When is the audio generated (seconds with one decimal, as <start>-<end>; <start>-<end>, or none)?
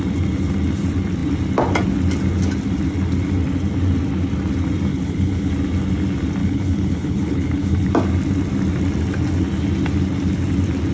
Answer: 4.9-5.5; 6.4-7.9